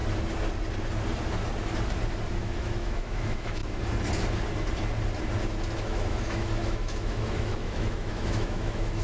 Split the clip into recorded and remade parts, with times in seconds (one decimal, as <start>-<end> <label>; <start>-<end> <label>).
0.0-2.3 recorded; 2.3-3.6 remade; 3.6-5.8 recorded; 5.8-9.0 remade